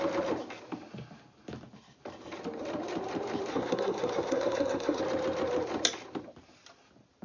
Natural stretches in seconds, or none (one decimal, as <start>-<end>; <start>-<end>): 0.0-3.5; 5.0-7.2